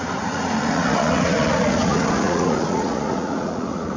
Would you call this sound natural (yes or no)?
no